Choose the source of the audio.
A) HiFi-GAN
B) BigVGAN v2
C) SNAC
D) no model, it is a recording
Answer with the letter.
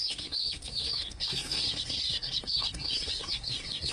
C